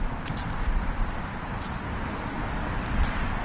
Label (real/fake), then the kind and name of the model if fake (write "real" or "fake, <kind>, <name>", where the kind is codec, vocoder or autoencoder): real